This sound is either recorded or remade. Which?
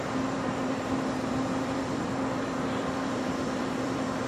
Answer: remade